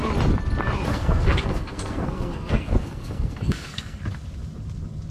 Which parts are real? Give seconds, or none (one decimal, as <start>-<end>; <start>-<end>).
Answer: 0.0-0.9; 4.0-5.1

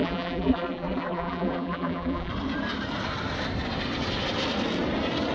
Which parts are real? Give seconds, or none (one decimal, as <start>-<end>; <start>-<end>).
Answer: 2.3-5.3